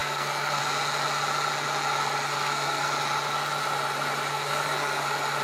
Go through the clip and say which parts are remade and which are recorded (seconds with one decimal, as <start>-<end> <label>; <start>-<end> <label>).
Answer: 0.0-0.6 remade; 0.6-2.3 recorded; 2.3-2.9 remade; 2.9-4.3 recorded; 4.3-5.0 remade; 5.0-5.4 recorded